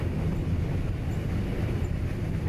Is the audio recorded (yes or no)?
yes